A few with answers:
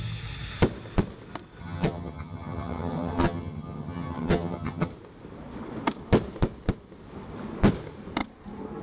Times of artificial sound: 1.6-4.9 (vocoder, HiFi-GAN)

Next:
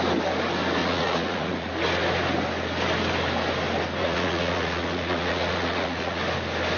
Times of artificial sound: 0.8-1.7 (vocoder, Vocos); 4.0-6.2

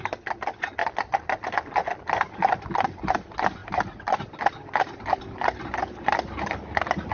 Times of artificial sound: none

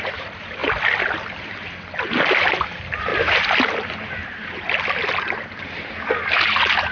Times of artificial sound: none